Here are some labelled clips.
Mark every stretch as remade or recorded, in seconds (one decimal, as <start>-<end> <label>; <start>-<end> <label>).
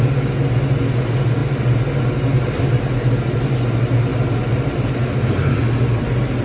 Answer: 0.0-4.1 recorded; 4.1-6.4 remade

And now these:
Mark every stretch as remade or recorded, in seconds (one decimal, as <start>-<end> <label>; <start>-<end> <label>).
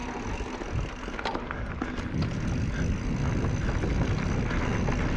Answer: 0.0-5.2 recorded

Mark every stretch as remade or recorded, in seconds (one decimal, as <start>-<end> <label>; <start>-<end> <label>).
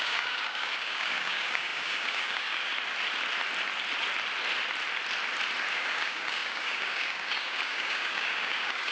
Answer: 0.0-2.7 remade; 2.7-5.7 recorded; 5.7-8.9 remade